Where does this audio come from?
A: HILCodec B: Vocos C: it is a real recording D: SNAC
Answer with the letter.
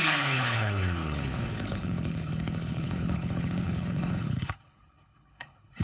A